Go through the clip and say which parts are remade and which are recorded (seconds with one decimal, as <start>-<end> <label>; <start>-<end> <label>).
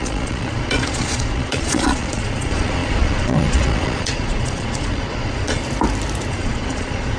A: 0.0-5.6 remade; 5.6-6.3 recorded; 6.3-7.2 remade